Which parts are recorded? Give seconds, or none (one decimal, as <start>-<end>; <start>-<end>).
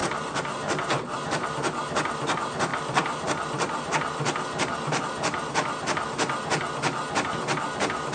0.0-2.7; 5.0-8.1